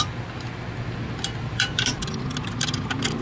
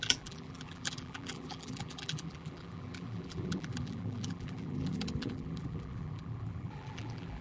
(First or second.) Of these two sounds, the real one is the first